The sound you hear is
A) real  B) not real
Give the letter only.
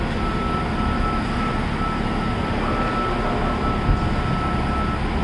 A